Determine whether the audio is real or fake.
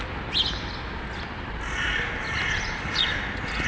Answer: real